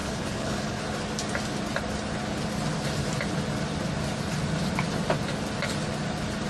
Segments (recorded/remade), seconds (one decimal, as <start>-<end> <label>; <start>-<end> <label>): 0.0-0.8 remade; 0.8-6.5 recorded